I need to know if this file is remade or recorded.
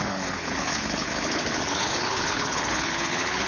remade